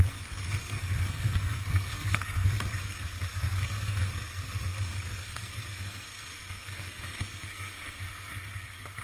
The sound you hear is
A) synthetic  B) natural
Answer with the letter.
A